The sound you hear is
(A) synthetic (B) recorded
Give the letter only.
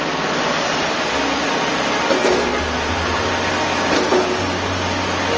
B